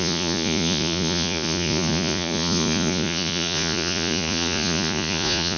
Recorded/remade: remade